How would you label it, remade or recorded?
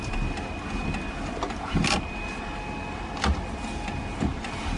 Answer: recorded